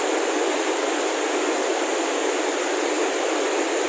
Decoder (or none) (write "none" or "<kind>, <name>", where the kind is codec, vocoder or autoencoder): none